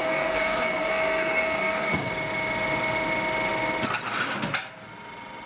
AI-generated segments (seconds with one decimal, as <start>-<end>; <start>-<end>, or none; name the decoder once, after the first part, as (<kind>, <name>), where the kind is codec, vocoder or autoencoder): 0.0-2.1 (codec, SNAC)